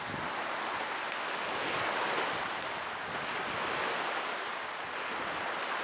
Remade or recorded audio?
recorded